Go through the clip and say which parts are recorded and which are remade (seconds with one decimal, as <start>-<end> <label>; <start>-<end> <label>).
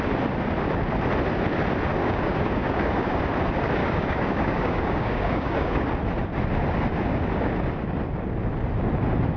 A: 0.0-2.0 recorded; 2.0-3.2 remade; 3.2-3.8 recorded; 3.8-5.8 remade; 5.8-9.4 recorded